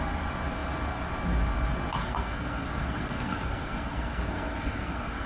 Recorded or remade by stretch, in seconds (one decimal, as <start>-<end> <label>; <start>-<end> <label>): 0.0-2.0 recorded; 2.0-5.3 remade

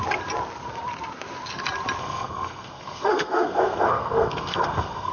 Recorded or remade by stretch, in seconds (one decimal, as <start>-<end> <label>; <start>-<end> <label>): 0.0-2.0 recorded; 2.0-5.1 remade

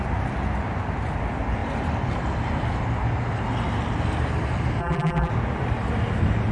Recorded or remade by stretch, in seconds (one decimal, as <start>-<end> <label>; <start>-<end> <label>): 0.0-4.8 recorded; 4.8-5.3 remade; 5.3-6.5 recorded

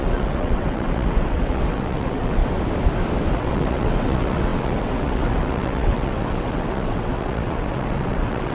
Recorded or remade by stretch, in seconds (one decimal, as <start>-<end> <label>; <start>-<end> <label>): 0.0-2.4 remade; 2.4-3.3 recorded; 3.3-8.5 remade

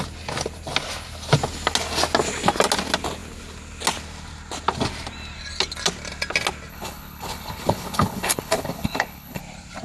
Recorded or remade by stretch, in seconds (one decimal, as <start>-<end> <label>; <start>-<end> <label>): 0.0-6.7 recorded; 6.7-9.4 remade; 9.4-9.8 recorded